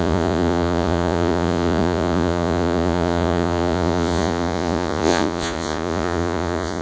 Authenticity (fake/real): fake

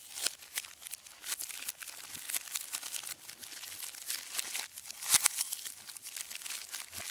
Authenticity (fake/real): real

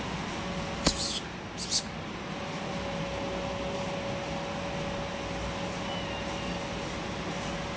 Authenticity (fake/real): real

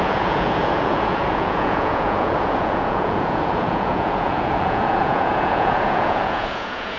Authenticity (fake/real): fake